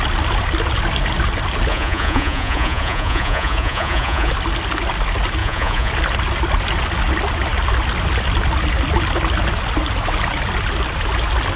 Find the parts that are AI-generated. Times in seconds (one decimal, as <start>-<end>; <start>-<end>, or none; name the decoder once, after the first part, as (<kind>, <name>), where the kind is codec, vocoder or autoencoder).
1.7-4.3 (vocoder, Vocos); 5.4-5.9